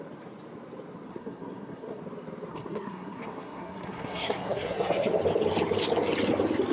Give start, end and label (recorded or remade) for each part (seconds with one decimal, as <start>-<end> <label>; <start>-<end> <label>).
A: 0.0-1.1 recorded; 1.1-2.0 remade; 2.0-2.5 recorded; 2.5-5.1 remade; 5.1-6.7 recorded